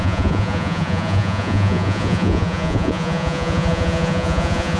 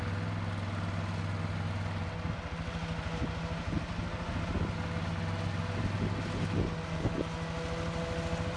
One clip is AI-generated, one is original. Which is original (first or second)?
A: second